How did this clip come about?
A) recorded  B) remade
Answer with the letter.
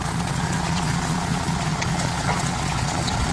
B